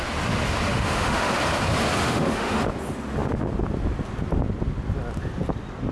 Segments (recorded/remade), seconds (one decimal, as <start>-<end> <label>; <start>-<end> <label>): 0.0-0.7 recorded; 0.7-1.3 remade; 1.3-2.0 recorded; 2.0-2.6 remade; 2.6-5.9 recorded